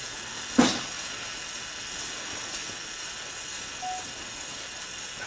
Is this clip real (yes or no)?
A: yes